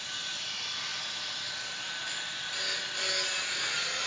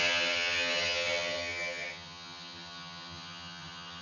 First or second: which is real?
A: first